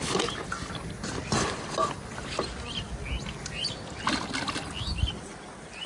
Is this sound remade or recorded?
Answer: recorded